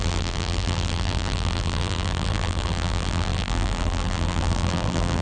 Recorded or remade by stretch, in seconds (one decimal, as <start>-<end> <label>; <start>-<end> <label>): 0.0-5.2 remade